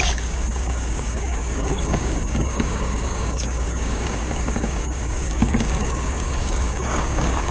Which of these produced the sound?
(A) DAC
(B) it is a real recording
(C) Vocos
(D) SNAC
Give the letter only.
A